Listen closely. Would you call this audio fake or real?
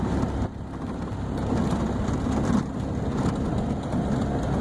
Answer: real